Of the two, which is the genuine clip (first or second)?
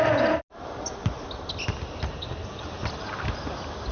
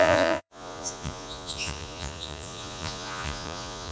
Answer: first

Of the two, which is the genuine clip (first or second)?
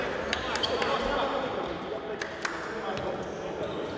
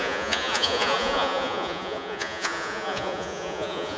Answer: first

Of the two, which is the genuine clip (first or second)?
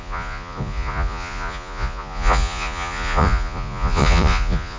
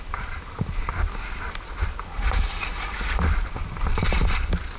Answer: second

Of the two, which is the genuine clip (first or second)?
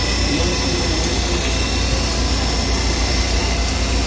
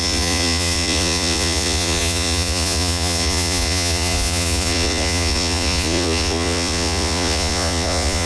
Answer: first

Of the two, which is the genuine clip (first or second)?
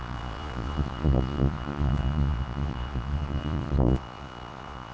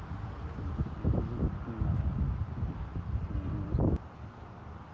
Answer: second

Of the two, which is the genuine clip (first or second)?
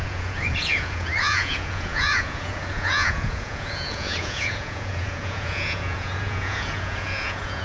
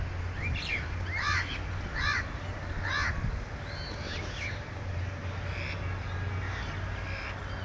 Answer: second